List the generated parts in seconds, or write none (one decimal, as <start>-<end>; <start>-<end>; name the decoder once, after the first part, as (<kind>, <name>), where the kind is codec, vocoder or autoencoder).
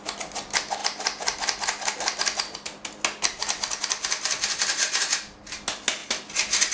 none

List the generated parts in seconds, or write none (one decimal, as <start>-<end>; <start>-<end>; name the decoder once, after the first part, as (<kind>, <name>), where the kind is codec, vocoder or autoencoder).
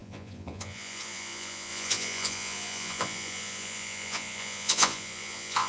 0.0-5.7 (vocoder, Vocos)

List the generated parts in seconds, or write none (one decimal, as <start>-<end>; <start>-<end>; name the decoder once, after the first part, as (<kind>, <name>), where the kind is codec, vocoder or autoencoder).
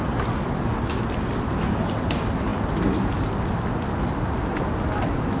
none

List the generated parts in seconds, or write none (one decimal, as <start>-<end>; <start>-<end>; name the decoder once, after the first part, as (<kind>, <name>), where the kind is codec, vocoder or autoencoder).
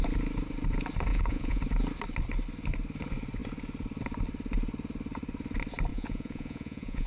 1.1-1.6 (vocoder, Vocos); 5.9-7.1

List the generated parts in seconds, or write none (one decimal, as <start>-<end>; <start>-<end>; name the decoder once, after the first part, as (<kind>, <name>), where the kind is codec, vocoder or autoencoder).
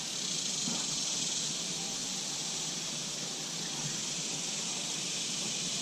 none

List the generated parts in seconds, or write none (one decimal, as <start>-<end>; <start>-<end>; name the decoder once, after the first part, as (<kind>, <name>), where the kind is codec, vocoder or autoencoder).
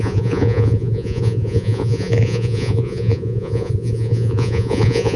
0.0-5.2 (vocoder, Vocos)